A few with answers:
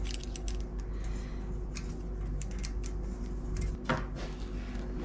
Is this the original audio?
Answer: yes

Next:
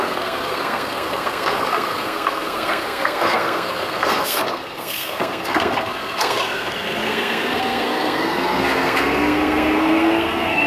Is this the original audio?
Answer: no